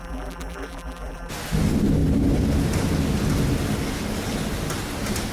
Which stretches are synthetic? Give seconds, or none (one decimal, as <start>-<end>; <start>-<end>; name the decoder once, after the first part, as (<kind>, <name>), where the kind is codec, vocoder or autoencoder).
0.0-1.3 (vocoder, BigVGAN v2)